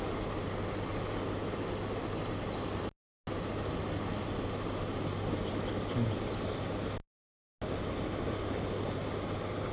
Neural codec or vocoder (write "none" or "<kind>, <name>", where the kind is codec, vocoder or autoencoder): none